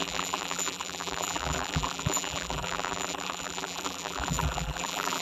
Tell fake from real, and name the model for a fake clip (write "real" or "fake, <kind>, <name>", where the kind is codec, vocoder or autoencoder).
fake, vocoder, BigVGAN v2